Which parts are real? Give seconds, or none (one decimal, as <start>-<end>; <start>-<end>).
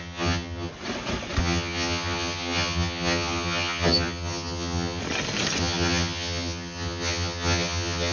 0.7-1.4; 5.0-5.6